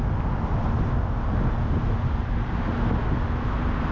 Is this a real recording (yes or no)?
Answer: yes